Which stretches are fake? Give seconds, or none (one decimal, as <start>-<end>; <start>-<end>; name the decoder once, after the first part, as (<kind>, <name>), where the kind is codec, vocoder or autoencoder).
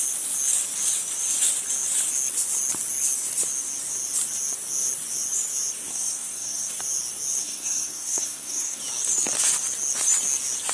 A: 5.9-6.7 (codec, SNAC); 7.4-8.8